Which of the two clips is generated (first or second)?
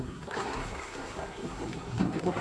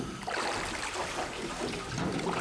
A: first